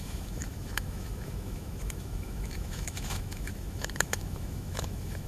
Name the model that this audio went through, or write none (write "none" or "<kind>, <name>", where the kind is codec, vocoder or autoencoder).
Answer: autoencoder, DAC-VAE